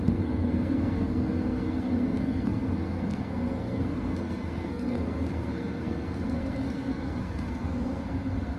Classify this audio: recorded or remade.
remade